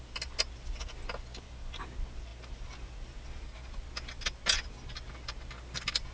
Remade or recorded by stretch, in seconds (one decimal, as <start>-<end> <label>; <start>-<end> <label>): 0.0-6.1 recorded